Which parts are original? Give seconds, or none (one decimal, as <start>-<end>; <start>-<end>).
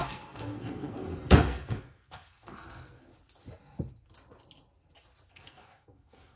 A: 3.1-5.3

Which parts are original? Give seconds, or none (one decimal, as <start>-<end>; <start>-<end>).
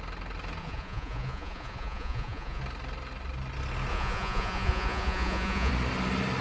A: 0.0-0.6; 2.6-3.9; 5.7-6.4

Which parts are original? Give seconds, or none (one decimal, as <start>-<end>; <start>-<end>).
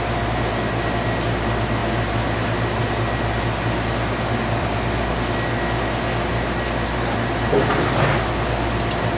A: 0.0-9.2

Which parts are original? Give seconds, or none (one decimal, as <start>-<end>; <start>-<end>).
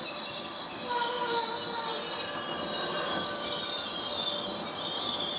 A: 0.0-5.4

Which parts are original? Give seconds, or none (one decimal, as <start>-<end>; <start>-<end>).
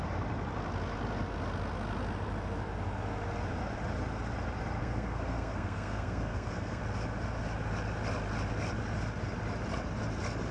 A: 0.0-4.8; 6.8-10.5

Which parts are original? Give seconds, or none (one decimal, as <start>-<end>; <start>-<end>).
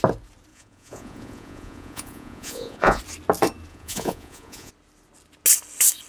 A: 0.0-0.5; 3.0-3.7; 4.7-6.1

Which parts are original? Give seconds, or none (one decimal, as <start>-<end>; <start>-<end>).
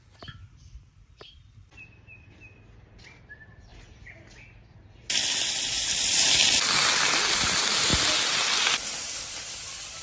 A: 3.7-5.5; 7.9-9.5